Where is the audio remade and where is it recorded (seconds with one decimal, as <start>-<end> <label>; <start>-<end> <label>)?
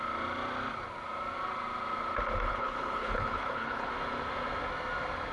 0.0-2.5 recorded; 2.5-3.9 remade; 3.9-5.3 recorded